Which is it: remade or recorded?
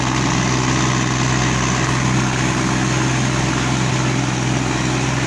recorded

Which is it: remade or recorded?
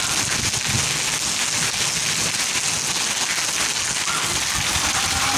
recorded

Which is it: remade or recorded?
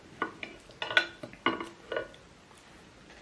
recorded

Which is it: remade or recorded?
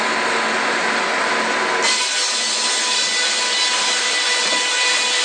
recorded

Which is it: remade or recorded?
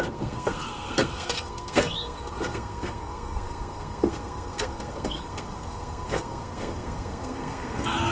remade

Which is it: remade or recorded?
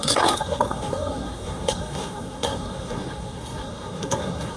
remade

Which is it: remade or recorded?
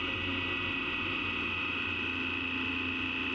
recorded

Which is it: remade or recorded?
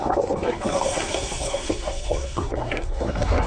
remade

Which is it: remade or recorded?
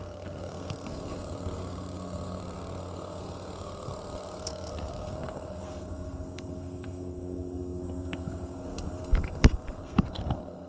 remade